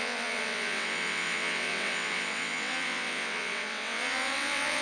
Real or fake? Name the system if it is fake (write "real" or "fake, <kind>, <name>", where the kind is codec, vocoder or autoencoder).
fake, vocoder, WaveNeXt